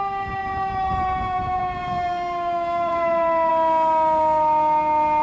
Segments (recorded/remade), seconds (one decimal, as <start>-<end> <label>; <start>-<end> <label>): 0.0-0.4 recorded; 0.4-3.5 remade; 3.5-5.2 recorded